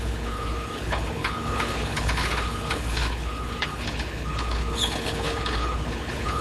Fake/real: fake